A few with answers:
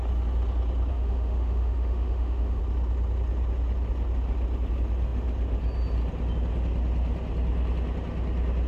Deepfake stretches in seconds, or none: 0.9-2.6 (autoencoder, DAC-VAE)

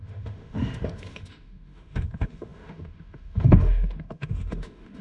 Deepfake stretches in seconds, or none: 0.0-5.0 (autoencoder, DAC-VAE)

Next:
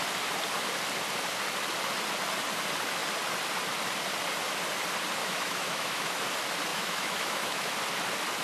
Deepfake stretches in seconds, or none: 5.2-6.2 (autoencoder, DAC-VAE); 6.7-7.7

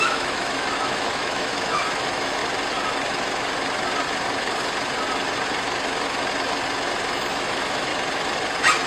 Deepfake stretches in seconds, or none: 0.0-2.4 (autoencoder, DAC-VAE); 7.3-7.9